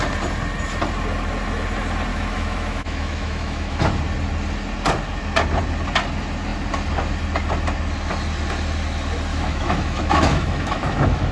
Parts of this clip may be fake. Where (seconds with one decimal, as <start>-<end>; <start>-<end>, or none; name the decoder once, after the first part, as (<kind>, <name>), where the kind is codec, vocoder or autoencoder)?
2.1-3.9 (autoencoder, DAC-VAE); 9.3-11.3